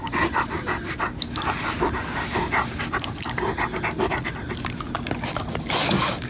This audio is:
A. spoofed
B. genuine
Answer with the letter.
B